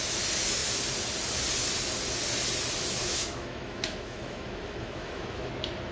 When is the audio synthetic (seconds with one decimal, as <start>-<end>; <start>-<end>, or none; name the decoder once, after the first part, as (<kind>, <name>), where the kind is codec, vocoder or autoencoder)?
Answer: 3.0-5.5 (autoencoder, DAC-VAE)